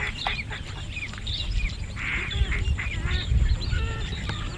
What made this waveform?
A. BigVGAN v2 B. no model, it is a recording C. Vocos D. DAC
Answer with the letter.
A